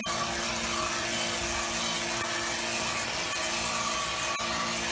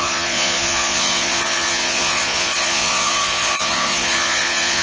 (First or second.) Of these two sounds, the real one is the first